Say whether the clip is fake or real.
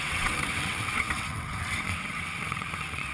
fake